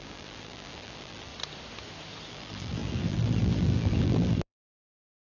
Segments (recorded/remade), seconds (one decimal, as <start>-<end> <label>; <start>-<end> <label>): 0.0-1.3 remade; 1.3-2.3 recorded; 2.3-5.4 remade